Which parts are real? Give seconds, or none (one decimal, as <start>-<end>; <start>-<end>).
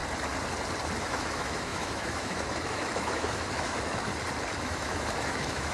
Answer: 0.0-1.0; 4.1-4.6